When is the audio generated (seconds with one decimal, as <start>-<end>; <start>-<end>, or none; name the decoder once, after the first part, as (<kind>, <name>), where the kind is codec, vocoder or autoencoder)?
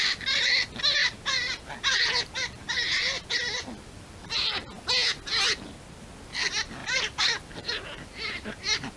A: 1.0-4.5 (vocoder, BigVGAN v2); 6.8-9.0